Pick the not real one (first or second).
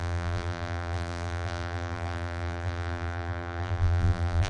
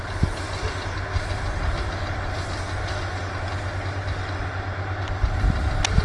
first